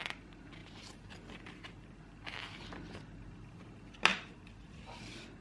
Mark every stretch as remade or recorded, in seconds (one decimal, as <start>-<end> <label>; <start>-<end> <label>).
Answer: 0.0-0.6 recorded; 0.6-1.1 remade; 1.1-4.1 recorded; 4.1-5.4 remade